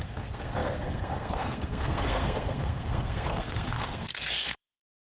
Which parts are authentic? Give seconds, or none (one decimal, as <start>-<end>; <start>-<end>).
none